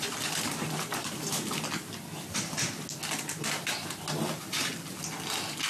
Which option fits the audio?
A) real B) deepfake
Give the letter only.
A